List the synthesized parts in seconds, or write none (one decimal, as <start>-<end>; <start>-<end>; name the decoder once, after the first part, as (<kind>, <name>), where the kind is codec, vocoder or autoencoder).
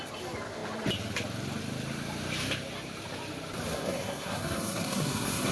3.7-5.5 (codec, SNAC)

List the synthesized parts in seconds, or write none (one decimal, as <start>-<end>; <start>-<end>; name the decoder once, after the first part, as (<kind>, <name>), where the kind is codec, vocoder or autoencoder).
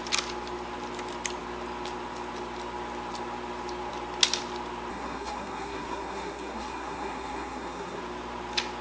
4.9-8.0 (codec, SNAC)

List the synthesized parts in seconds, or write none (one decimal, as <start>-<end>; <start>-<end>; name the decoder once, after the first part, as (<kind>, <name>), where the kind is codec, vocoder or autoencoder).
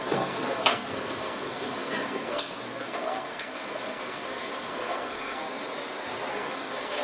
0.0-5.4 (codec, SNAC); 6.3-7.0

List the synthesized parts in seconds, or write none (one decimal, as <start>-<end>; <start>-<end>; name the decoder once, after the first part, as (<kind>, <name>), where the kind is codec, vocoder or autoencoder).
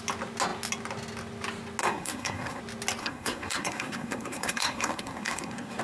1.8-2.6 (codec, SNAC); 3.0-5.8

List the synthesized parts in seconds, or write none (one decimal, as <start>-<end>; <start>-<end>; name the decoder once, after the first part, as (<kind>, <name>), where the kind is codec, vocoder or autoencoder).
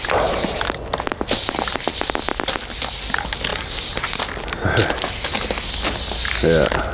none